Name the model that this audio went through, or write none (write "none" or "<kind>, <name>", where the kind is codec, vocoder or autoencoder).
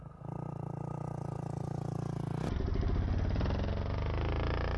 none